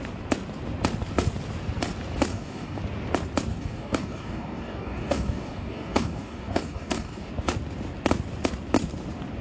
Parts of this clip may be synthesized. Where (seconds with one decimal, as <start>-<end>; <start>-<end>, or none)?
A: 2.3-2.8; 3.5-7.3